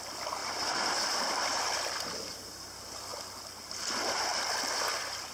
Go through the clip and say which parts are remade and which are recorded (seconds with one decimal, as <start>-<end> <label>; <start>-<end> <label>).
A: 0.0-0.4 recorded; 0.4-1.8 remade; 1.8-5.3 recorded